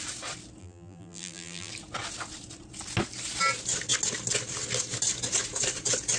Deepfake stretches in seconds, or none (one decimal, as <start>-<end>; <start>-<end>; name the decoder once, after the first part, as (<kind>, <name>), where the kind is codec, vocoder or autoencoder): 0.6-1.7 (vocoder, BigVGAN v2)